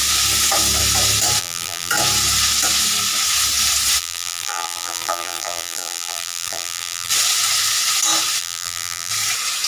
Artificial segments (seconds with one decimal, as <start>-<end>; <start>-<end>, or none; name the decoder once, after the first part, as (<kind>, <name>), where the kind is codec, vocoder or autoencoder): 1.4-1.9 (vocoder, BigVGAN v2); 4.0-7.1; 8.4-9.1